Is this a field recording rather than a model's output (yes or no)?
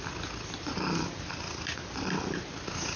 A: yes